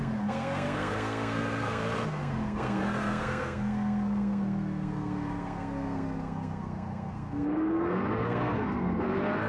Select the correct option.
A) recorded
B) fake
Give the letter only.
B